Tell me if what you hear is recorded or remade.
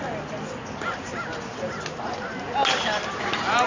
recorded